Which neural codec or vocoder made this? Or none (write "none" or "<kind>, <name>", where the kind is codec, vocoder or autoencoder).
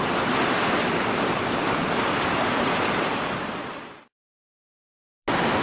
none